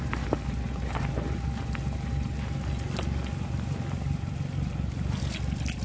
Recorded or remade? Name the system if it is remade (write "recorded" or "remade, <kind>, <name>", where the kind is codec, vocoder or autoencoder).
recorded